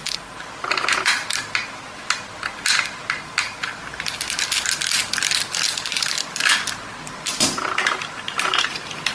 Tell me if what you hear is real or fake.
real